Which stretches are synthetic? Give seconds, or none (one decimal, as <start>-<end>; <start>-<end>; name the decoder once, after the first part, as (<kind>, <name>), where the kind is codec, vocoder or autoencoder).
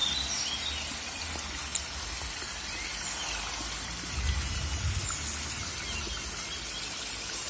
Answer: none